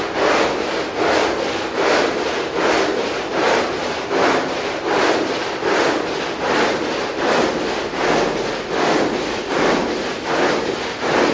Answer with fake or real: real